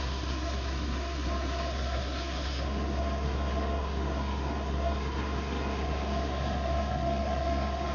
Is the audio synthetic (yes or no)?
yes